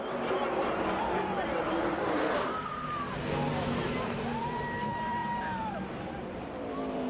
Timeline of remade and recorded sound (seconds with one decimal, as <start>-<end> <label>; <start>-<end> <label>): 0.0-2.7 remade; 2.7-3.5 recorded; 3.5-7.1 remade